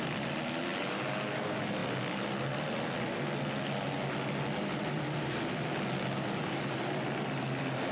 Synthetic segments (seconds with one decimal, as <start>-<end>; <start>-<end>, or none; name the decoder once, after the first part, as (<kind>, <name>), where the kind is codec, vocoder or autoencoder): none